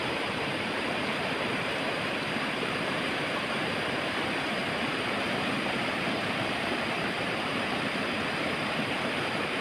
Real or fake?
fake